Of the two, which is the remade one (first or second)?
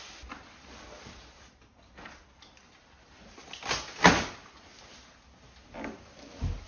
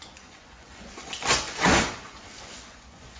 second